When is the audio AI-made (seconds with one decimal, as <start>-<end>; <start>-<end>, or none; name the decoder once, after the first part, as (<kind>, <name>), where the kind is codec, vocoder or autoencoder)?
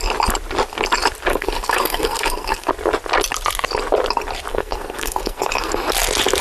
1.3-2.7 (codec, SNAC); 4.5-5.7